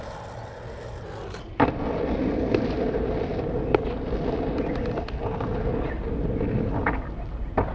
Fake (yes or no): no